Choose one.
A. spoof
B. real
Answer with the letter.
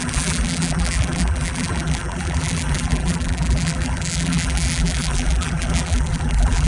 A